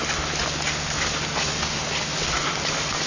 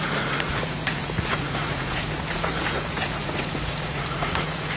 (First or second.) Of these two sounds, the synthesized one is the second